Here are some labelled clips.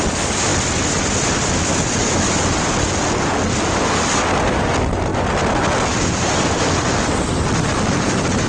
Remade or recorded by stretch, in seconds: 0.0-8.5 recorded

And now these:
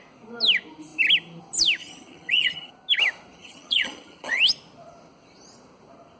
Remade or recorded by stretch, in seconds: 0.0-1.8 recorded; 1.8-2.7 remade; 2.7-3.4 recorded; 3.4-4.4 remade; 4.4-6.2 recorded

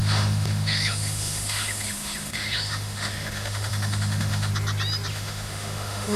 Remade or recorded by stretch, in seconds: 0.0-4.5 remade; 4.5-5.1 recorded; 5.1-6.2 remade

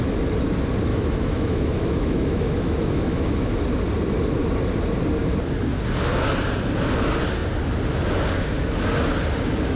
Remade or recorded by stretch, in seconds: 0.0-0.9 recorded; 0.9-3.6 remade; 3.6-9.8 recorded

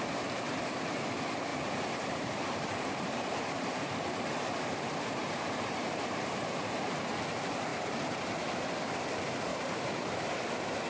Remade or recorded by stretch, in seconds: 0.0-1.5 recorded; 1.5-4.8 remade; 4.8-5.2 recorded; 5.2-7.3 remade; 7.3-9.5 recorded; 9.5-10.3 remade; 10.3-10.9 recorded

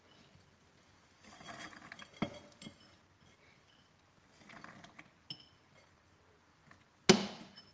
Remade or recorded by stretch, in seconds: 0.0-7.7 recorded